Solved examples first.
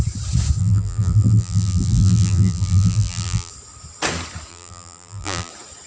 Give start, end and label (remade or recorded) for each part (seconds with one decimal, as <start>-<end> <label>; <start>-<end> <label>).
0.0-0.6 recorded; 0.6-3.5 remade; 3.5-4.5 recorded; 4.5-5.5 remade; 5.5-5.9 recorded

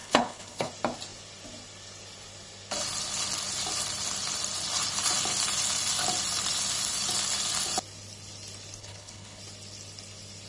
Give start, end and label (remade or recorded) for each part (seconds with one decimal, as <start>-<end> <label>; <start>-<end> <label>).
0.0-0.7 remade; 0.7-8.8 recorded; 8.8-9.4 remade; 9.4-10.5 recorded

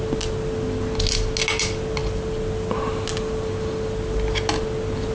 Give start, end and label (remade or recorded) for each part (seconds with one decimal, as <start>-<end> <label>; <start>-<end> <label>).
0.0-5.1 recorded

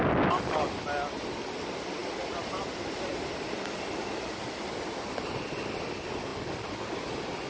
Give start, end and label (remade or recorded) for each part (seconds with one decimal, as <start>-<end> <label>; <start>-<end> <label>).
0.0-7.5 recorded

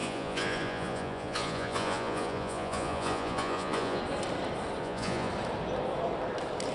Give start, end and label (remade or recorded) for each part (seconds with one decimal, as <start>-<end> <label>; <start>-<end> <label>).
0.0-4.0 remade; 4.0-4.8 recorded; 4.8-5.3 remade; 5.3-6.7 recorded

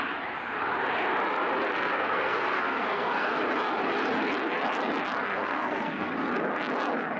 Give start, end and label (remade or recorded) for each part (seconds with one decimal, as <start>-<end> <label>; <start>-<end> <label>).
0.0-1.7 recorded; 1.7-3.4 remade; 3.4-5.3 recorded; 5.3-6.1 remade; 6.1-7.2 recorded

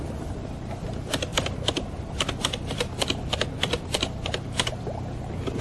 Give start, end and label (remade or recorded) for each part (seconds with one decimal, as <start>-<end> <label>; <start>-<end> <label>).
0.0-1.3 recorded; 1.3-4.7 remade; 4.7-5.6 recorded

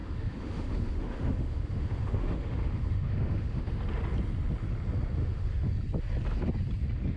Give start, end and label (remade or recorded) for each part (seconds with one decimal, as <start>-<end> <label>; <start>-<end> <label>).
0.0-3.8 remade; 3.8-5.2 recorded; 5.2-5.7 remade; 5.7-7.2 recorded